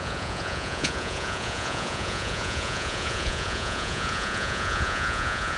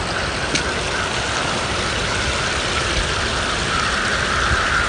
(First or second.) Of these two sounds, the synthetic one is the first